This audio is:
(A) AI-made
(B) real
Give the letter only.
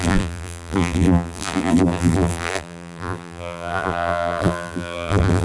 A